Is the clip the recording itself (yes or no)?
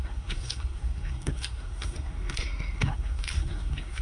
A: no